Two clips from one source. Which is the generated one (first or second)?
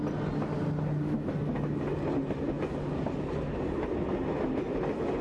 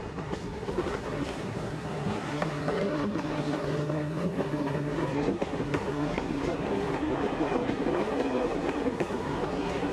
second